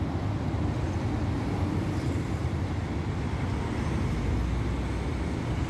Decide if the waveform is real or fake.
real